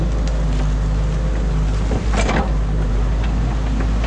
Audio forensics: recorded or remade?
recorded